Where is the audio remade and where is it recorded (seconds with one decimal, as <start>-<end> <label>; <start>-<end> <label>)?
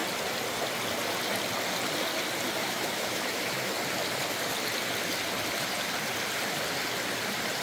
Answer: 0.0-2.6 recorded; 2.6-3.7 remade; 3.7-7.6 recorded